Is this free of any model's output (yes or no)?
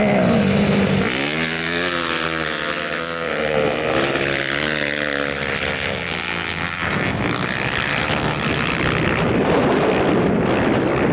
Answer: yes